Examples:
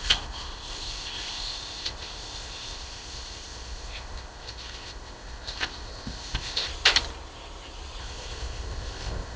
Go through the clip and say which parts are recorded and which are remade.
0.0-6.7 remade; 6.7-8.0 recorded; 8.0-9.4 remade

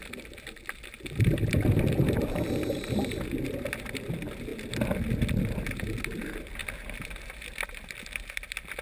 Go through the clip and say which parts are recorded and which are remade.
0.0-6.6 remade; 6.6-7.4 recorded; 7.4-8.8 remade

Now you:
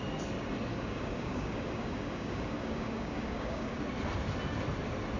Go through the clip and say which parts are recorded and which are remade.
0.0-0.7 recorded; 0.7-3.8 remade; 3.8-5.2 recorded

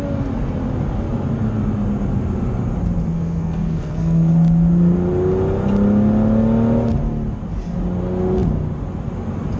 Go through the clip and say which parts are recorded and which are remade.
0.0-3.1 recorded; 3.1-4.3 remade; 4.3-9.6 recorded

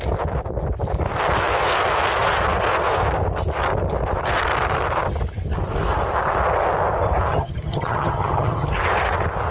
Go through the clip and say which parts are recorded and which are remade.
0.0-7.3 recorded; 7.3-8.7 remade; 8.7-9.5 recorded